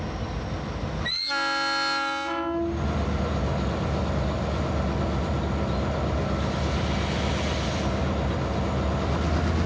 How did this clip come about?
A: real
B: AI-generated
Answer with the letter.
A